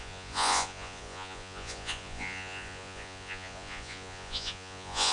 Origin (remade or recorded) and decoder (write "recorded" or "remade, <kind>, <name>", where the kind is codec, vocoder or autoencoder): remade, vocoder, Vocos